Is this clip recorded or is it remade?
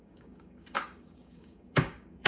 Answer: remade